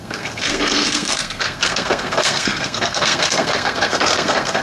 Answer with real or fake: fake